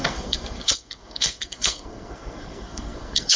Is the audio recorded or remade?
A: remade